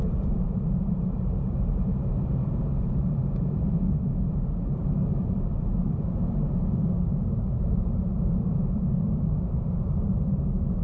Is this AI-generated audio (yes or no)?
yes